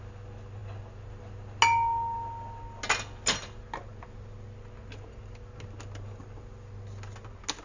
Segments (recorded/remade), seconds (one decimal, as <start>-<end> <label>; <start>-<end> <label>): 0.0-7.6 recorded